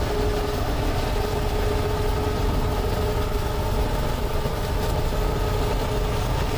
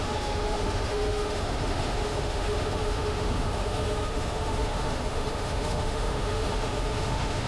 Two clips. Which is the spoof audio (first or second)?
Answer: second